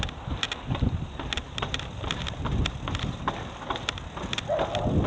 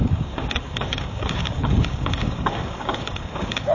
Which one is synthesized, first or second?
second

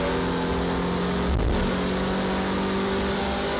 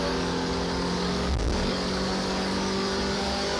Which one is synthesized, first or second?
second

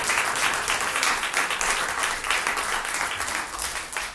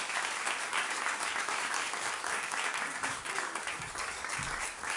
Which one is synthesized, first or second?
second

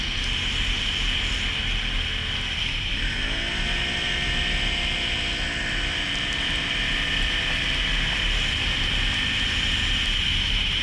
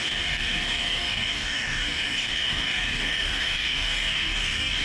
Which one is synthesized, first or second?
second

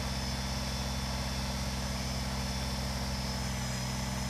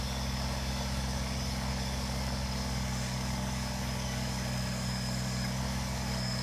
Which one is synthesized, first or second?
second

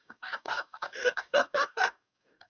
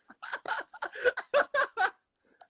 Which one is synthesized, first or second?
first